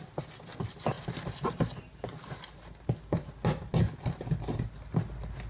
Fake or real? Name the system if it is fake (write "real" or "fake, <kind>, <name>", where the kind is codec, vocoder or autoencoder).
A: real